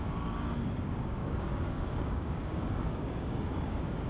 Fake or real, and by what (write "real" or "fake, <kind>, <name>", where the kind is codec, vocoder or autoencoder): fake, codec, DAC